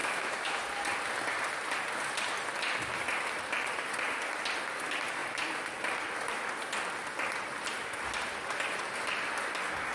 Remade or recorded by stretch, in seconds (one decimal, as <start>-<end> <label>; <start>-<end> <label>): 0.0-0.6 remade; 0.6-9.9 recorded